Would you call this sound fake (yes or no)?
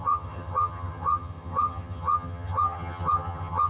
yes